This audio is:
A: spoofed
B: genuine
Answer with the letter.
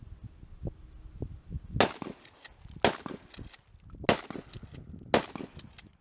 B